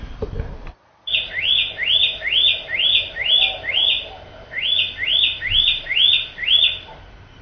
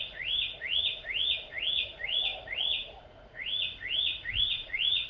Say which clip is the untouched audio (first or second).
first